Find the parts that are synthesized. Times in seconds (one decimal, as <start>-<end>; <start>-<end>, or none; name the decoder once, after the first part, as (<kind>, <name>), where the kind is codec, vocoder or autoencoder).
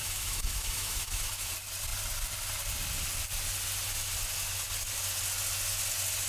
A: 0.0-1.5 (autoencoder, DAC-VAE)